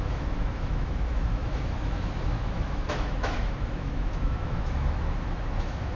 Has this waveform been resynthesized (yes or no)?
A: yes